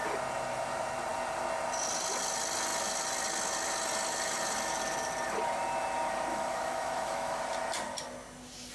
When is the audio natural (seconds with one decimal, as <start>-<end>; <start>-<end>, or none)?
0.0-6.3; 7.4-8.7